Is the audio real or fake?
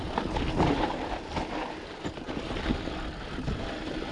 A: real